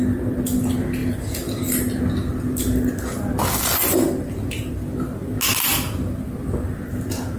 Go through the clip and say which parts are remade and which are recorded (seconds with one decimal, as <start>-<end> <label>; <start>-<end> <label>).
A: 0.0-7.4 recorded